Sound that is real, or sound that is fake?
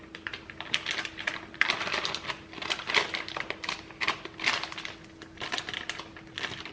fake